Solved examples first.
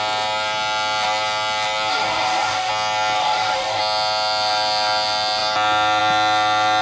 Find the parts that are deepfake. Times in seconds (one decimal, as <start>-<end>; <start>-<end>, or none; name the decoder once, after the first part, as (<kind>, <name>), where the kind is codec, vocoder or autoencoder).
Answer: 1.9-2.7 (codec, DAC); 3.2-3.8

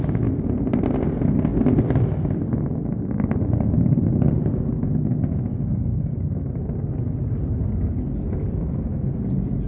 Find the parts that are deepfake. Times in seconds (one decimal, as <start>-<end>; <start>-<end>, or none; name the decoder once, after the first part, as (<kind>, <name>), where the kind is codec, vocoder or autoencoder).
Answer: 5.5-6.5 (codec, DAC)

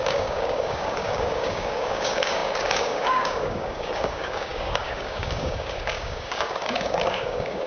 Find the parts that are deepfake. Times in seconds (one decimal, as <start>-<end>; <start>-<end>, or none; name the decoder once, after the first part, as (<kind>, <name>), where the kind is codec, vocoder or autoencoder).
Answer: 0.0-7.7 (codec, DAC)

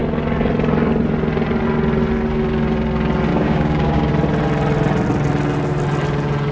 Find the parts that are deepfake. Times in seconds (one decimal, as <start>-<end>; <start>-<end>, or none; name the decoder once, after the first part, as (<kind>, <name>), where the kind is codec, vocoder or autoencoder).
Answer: 3.3-4.1 (codec, DAC)